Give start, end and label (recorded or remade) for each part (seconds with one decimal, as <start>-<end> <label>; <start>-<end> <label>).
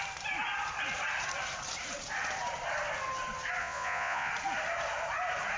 0.0-3.6 recorded; 3.6-4.3 remade; 4.3-5.6 recorded